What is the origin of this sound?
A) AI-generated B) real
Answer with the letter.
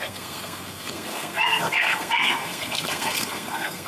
A